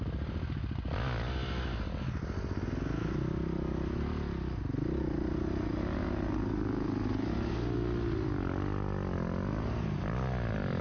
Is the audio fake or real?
real